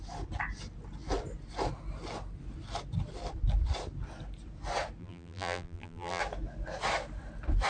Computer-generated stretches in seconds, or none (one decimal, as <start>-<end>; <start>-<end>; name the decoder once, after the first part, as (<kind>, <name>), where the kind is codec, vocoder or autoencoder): 5.0-6.2 (vocoder, BigVGAN v2)